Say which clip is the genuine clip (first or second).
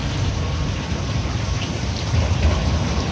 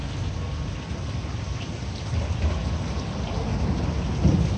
second